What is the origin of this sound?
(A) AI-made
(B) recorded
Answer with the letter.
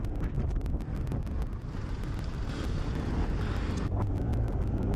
B